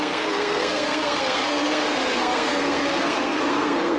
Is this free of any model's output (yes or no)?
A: no